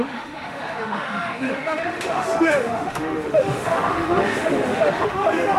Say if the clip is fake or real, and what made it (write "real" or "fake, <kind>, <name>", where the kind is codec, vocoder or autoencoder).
fake, autoencoder, DAC-VAE